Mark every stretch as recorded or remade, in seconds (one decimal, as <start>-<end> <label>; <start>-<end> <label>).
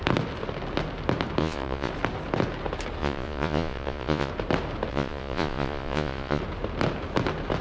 0.0-1.4 recorded; 1.4-1.9 remade; 1.9-3.0 recorded; 3.0-4.3 remade; 4.3-4.9 recorded; 4.9-6.4 remade; 6.4-7.6 recorded